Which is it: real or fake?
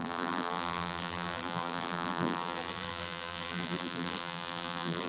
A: fake